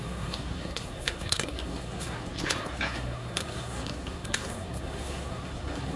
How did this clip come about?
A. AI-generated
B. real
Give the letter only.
A